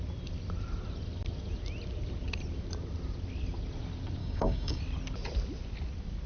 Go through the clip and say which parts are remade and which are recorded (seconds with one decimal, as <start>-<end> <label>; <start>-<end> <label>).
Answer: 0.0-4.2 recorded; 4.2-4.8 remade; 4.8-6.3 recorded